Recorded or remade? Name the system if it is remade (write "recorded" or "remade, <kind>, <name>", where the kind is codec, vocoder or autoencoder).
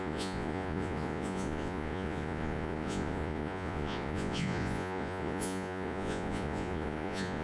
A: remade, vocoder, Vocos